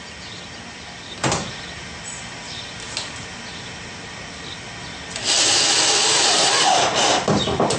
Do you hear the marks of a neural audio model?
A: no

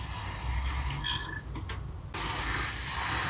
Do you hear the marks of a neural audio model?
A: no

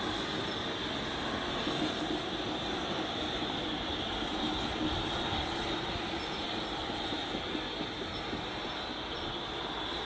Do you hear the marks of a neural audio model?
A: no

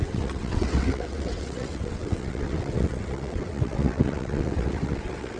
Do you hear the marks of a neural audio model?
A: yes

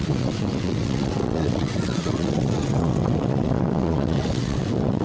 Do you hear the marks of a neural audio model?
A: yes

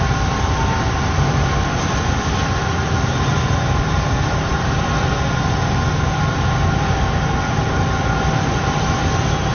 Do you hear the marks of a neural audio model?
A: no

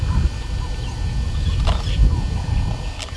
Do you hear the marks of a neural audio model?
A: no